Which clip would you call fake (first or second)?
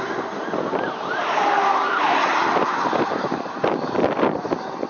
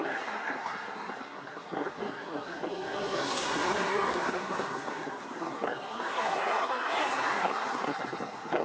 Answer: second